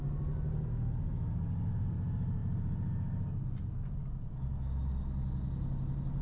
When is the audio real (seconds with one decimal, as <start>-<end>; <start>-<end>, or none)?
0.0-6.2